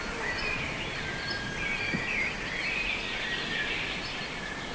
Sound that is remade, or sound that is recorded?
recorded